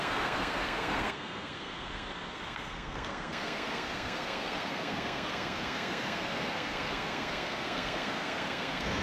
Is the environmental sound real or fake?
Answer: fake